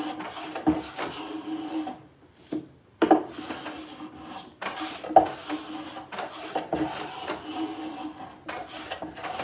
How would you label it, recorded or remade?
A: recorded